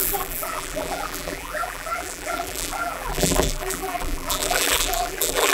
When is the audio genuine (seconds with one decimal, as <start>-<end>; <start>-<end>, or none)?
none